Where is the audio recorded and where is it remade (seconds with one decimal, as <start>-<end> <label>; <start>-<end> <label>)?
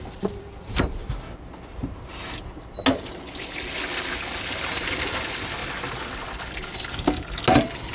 0.0-1.0 remade; 1.0-4.4 recorded; 4.4-5.6 remade; 5.6-7.5 recorded; 7.5-7.9 remade